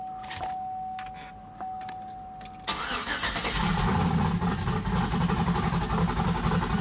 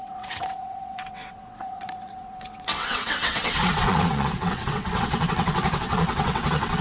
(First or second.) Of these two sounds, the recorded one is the first